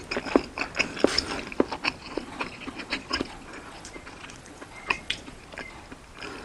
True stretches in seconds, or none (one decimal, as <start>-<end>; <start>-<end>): 0.0-2.0; 5.4-6.4